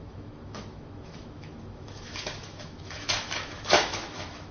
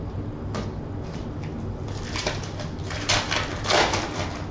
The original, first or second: second